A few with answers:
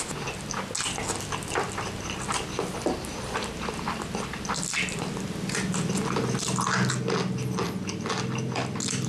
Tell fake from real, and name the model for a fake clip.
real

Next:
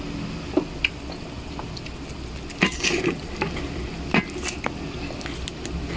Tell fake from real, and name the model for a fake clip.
real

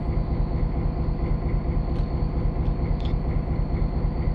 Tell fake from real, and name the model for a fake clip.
real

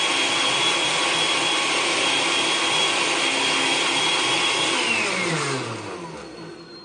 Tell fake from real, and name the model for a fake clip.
real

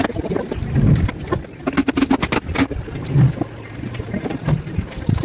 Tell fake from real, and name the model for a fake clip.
real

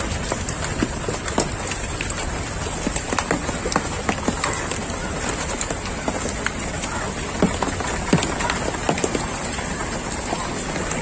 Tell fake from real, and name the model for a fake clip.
real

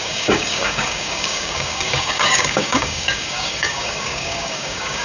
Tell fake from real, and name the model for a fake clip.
fake, codec, DAC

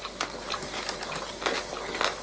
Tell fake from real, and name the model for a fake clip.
real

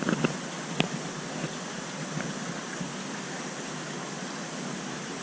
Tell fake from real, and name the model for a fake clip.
real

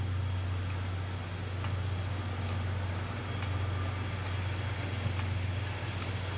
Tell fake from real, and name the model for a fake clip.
real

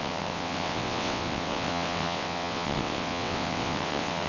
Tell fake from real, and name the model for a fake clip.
fake, vocoder, WaveNeXt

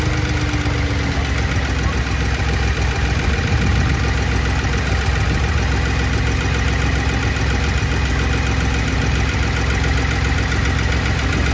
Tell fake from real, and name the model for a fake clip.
real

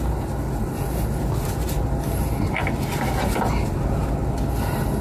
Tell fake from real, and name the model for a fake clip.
real